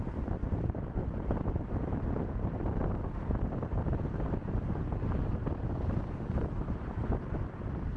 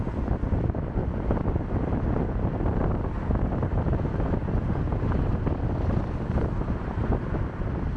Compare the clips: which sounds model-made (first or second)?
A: first